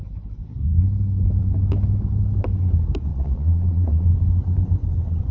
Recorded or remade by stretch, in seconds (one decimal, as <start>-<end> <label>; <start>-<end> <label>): 0.0-3.1 recorded; 3.1-4.1 remade; 4.1-5.3 recorded